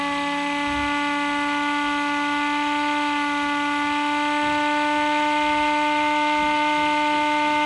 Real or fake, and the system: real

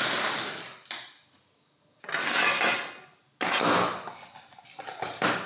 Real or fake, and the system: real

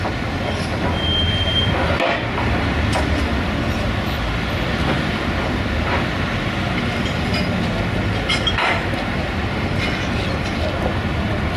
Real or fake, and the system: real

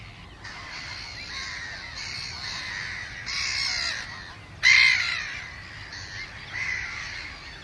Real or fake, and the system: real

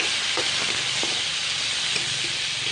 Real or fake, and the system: real